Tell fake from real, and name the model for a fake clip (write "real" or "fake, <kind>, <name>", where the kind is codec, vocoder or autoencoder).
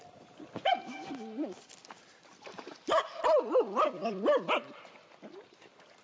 fake, vocoder, BigVGAN v2